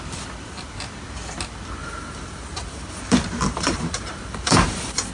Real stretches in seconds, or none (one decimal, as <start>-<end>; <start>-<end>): 0.0-1.8